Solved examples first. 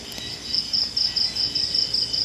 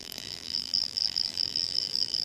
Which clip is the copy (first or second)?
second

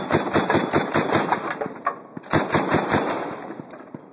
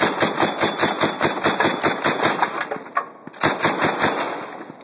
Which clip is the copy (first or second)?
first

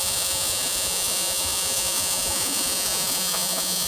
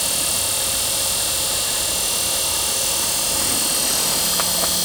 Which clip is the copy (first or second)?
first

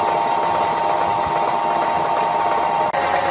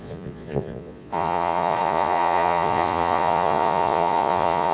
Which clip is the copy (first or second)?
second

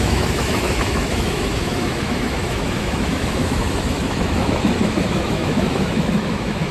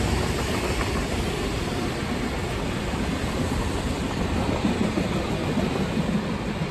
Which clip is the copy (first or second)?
first